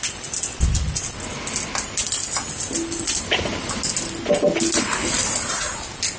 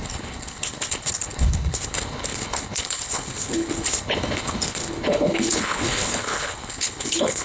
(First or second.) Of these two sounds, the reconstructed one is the second